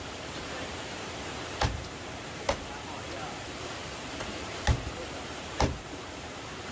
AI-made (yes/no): yes